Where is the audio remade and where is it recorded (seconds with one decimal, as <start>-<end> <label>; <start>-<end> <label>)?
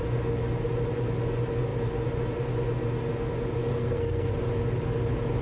0.0-3.7 recorded; 3.7-4.3 remade; 4.3-5.4 recorded